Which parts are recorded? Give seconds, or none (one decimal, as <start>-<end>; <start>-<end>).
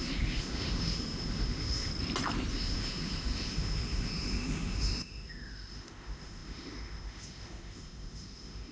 1.9-2.5